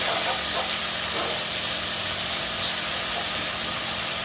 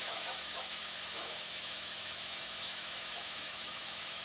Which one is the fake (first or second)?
second